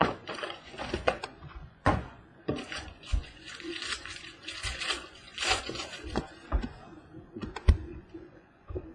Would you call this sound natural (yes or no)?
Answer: no